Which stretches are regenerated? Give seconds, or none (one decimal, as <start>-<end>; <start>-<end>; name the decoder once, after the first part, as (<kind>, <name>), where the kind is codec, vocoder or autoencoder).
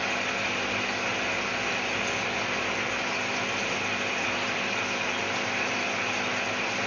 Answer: none